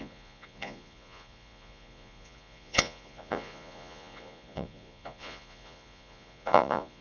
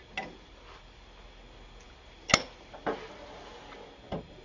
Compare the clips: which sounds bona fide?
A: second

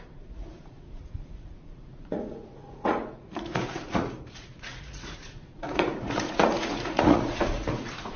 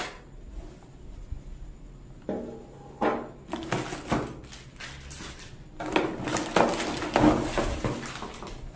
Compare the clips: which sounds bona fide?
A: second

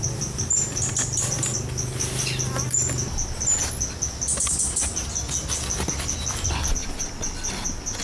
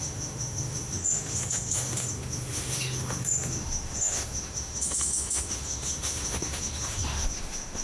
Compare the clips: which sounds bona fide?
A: first